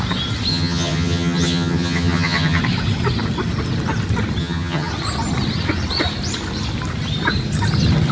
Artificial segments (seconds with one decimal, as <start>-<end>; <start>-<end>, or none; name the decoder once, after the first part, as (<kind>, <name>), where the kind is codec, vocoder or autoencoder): 0.5-2.6 (vocoder, HiFi-GAN); 4.4-4.9